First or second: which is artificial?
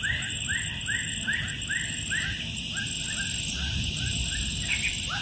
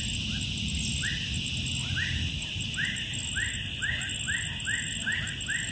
first